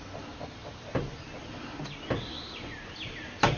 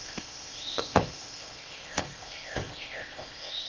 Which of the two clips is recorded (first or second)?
first